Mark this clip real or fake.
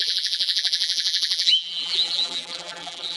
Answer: fake